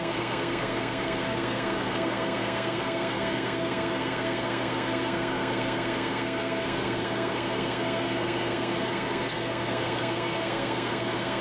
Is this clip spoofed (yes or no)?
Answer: yes